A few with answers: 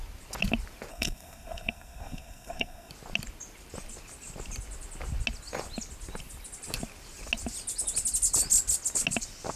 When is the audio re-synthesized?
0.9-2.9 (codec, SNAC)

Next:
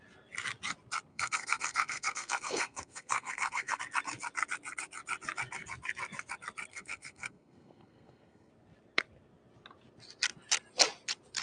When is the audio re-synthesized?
1.1-3.8 (codec, SNAC); 6.7-8.5

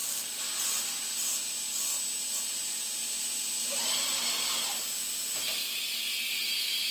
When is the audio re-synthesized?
none

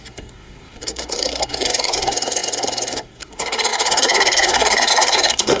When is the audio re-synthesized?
0.0-5.6 (codec, SNAC)

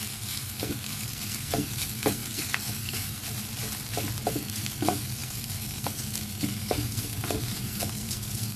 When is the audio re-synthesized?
0.0-3.2 (codec, SNAC); 4.3-8.6

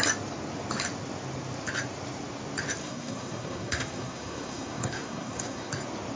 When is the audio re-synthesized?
2.8-5.7 (codec, SNAC)